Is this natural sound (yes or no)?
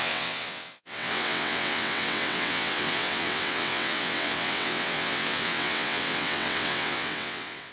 no